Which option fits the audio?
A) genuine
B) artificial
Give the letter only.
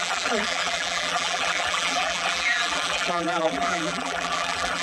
B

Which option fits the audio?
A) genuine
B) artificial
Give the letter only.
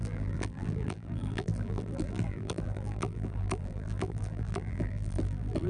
B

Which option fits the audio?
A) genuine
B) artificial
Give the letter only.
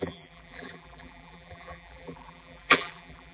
B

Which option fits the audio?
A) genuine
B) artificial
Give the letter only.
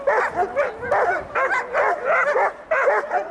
A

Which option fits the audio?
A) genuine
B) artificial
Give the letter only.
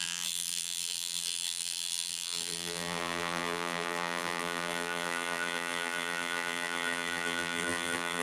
B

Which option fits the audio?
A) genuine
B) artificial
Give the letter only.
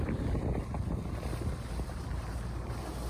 A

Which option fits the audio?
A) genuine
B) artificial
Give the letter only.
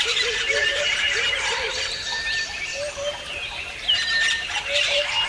B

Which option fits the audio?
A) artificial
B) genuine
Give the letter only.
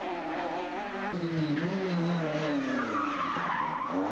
A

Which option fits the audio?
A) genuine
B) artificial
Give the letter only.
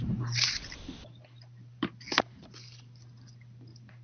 A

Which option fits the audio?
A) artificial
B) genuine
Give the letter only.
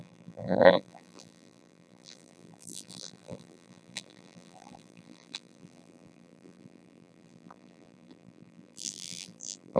A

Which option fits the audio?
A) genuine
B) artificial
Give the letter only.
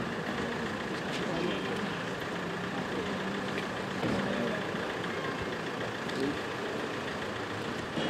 B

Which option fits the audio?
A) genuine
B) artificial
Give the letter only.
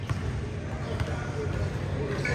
A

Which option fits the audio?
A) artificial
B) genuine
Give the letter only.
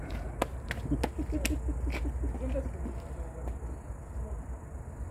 B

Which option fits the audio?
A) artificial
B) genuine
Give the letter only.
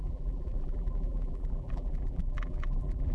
A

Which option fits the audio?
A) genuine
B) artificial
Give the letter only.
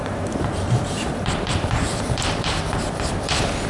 B